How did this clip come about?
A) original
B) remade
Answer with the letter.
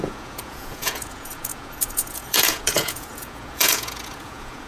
B